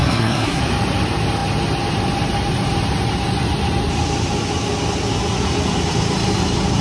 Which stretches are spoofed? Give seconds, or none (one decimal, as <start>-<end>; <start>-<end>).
0.0-0.6